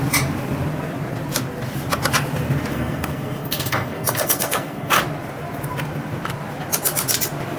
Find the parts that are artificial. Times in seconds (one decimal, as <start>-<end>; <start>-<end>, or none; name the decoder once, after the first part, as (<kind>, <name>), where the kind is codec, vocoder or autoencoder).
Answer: 2.7-5.0 (codec, SNAC)

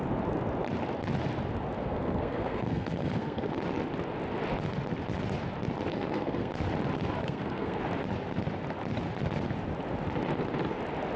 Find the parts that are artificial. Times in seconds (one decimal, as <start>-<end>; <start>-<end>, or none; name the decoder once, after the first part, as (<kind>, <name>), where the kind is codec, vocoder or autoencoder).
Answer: 1.8-3.6 (codec, SNAC); 5.9-6.5; 7.2-7.8

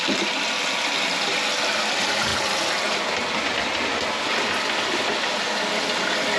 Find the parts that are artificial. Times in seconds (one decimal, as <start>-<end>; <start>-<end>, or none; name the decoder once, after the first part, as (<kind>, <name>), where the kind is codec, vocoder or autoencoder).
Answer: none

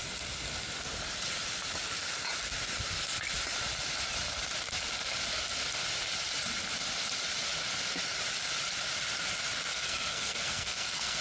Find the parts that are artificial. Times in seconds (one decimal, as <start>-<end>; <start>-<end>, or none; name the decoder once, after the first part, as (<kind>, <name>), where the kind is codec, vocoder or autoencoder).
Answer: 9.7-11.2 (codec, SNAC)

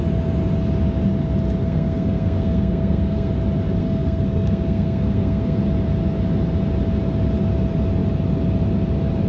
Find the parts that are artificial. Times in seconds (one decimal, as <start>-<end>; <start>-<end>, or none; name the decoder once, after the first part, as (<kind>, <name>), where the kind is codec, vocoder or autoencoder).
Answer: 1.6-3.3 (codec, SNAC); 3.8-5.6

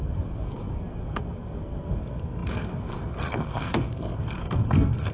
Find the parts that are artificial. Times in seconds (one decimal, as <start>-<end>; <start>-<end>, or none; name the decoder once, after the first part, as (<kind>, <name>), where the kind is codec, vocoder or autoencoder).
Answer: 0.0-5.1 (codec, SNAC)